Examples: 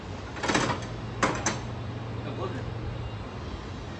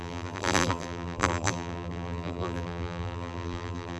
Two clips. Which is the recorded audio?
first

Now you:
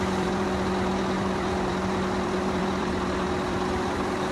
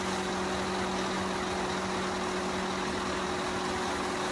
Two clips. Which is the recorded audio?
second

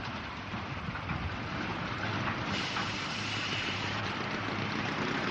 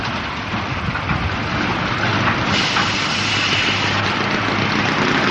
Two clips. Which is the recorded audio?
second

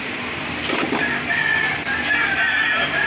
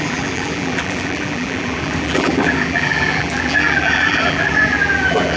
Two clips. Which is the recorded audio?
first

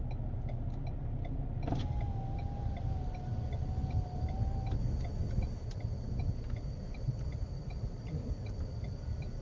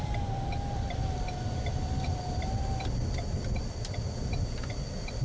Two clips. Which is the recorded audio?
first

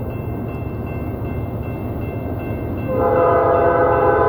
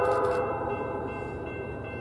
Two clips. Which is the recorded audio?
first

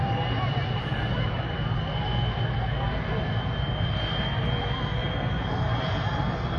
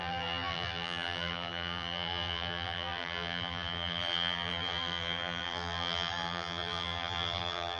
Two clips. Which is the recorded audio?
first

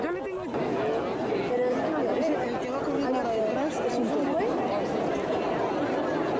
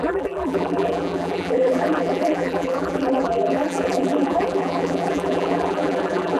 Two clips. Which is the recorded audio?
first